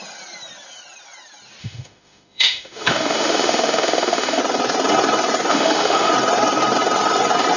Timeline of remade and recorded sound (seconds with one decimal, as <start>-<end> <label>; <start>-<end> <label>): 0.0-1.6 recorded; 1.6-4.4 remade; 4.4-5.5 recorded; 5.5-6.1 remade; 6.1-7.6 recorded